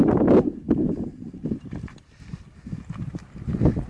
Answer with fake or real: real